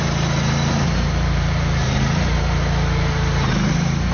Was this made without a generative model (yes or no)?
no